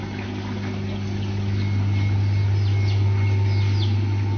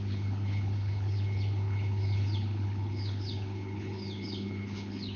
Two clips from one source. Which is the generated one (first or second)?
second